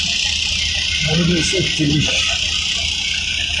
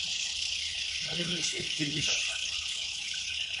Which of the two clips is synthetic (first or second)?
second